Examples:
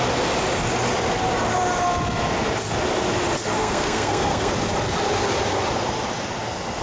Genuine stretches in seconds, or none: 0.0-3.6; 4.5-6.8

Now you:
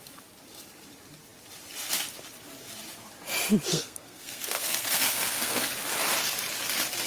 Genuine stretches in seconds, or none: 0.0-3.7; 5.7-7.1

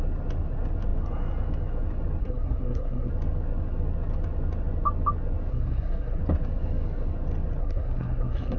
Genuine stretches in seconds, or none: 0.0-2.2; 3.1-5.5; 6.2-7.6

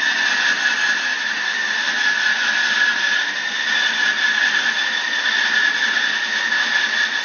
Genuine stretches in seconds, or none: 0.0-7.2